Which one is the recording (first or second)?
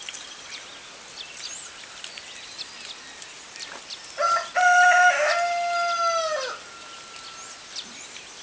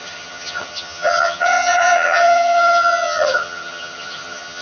first